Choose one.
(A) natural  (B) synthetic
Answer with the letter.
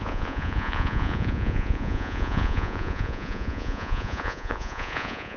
B